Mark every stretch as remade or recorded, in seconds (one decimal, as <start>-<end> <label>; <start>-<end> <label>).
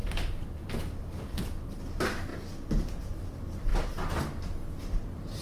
0.0-2.3 remade; 2.3-3.0 recorded; 3.0-3.7 remade; 3.7-5.0 recorded; 5.0-5.4 remade